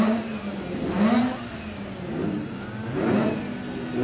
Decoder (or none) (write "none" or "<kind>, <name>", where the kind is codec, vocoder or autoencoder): none